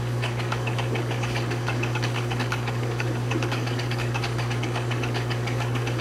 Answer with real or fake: fake